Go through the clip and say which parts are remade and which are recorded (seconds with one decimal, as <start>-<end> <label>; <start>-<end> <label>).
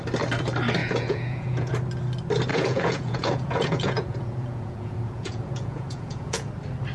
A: 0.0-0.8 recorded; 0.8-1.7 remade; 1.7-2.5 recorded; 2.5-6.5 remade; 6.5-6.9 recorded